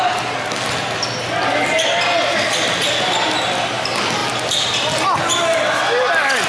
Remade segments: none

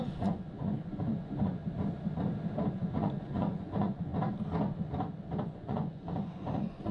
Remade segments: 0.0-1.6 (vocoder, Vocos); 2.7-4.1; 5.4-6.9

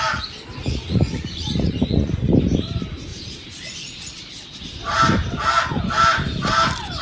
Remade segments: 0.6-2.3 (vocoder, Vocos); 3.1-4.2